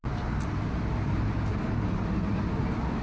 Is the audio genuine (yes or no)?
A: yes